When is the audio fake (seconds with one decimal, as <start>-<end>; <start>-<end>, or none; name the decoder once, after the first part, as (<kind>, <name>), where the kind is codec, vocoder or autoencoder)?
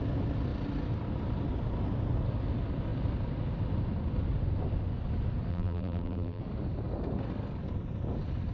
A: 5.5-6.4 (vocoder, BigVGAN v2)